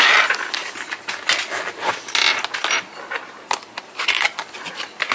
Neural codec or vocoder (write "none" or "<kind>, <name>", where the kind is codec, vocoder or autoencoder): none